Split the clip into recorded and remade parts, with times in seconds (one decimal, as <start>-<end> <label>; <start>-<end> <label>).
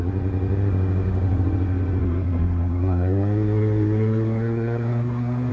0.0-2.0 recorded; 2.0-5.5 remade